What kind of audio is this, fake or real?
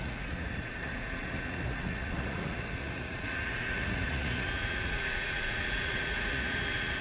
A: fake